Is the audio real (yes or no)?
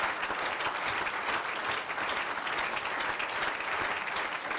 yes